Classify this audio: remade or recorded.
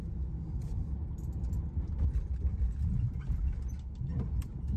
recorded